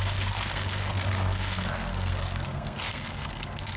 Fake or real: fake